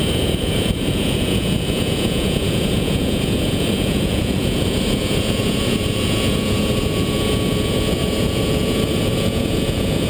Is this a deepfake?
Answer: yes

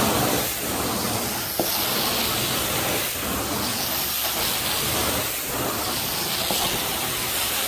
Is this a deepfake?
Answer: no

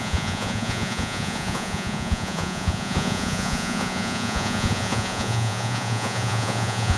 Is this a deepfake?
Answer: yes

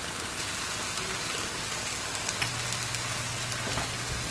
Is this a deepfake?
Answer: no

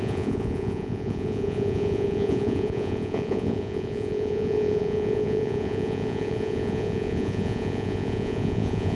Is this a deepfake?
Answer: yes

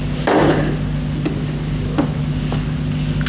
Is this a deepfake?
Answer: no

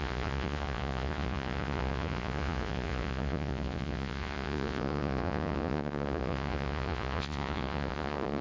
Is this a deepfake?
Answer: yes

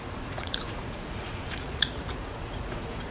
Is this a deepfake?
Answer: yes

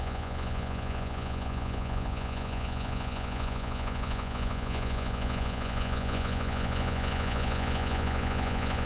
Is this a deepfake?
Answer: yes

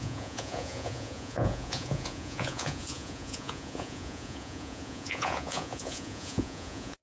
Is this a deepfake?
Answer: yes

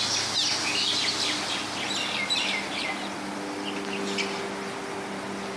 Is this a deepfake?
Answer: no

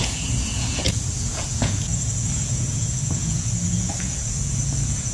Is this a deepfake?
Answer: yes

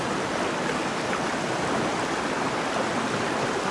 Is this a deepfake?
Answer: no